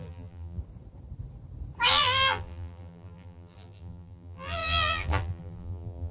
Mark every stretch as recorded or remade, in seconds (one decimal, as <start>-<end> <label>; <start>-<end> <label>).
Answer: 0.0-0.6 remade; 0.6-1.9 recorded; 1.9-6.1 remade